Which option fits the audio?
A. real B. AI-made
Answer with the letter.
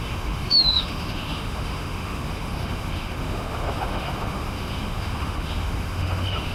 B